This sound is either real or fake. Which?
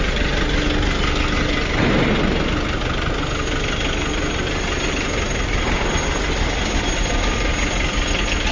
real